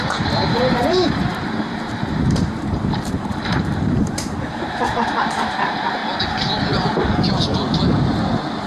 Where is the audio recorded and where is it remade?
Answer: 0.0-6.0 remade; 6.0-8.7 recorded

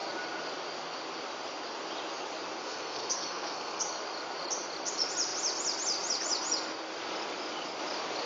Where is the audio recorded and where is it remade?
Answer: 0.0-2.6 recorded; 2.6-3.8 remade; 3.8-8.3 recorded

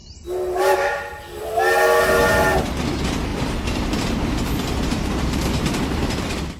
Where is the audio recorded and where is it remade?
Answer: 0.0-1.4 remade; 1.4-3.3 recorded; 3.3-6.6 remade

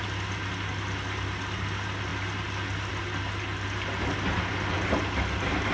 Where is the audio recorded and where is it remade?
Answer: 0.0-5.7 recorded

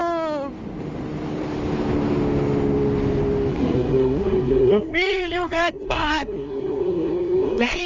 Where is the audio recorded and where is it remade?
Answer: 0.0-3.5 recorded; 3.5-7.9 remade

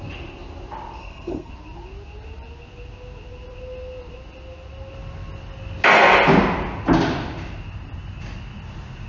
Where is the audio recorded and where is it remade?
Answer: 0.0-1.0 recorded; 1.0-1.5 remade; 1.5-9.1 recorded

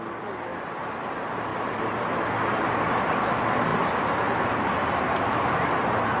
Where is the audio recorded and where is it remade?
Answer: 0.0-0.5 recorded; 0.5-1.1 remade; 1.1-1.5 recorded; 1.5-2.2 remade; 2.2-3.7 recorded; 3.7-5.4 remade; 5.4-6.2 recorded